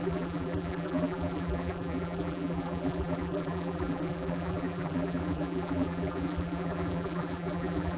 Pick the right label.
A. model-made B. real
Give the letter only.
A